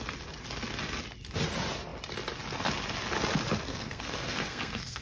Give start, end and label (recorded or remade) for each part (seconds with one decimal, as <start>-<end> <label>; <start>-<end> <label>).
0.0-3.7 recorded; 3.7-5.0 remade